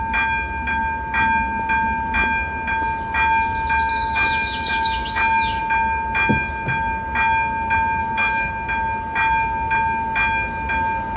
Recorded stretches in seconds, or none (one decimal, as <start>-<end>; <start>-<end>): 0.0-3.9; 5.6-8.0; 8.5-11.2